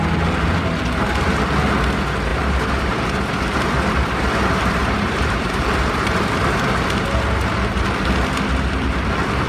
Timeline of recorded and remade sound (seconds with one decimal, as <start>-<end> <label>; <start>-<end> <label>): 0.0-2.3 recorded; 2.3-6.3 remade; 6.3-9.5 recorded